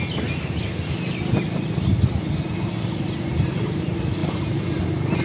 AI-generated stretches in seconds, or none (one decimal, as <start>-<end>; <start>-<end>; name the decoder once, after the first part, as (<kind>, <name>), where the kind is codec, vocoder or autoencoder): 4.2-5.2 (vocoder, BigVGAN v2)